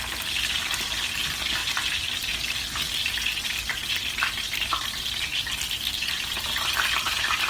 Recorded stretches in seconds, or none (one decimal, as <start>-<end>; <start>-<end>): 0.0-7.5